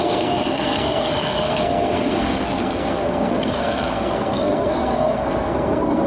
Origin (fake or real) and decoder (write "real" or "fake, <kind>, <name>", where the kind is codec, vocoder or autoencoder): fake, codec, SNAC